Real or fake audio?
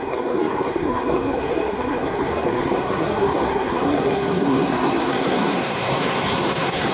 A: fake